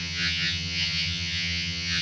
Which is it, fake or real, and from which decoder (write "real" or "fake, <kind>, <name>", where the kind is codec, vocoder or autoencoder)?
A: fake, vocoder, HiFi-GAN